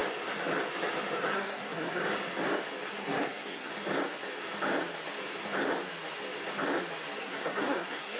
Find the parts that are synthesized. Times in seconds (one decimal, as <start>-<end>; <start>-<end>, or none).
1.3-2.0; 2.9-3.7; 7.2-8.2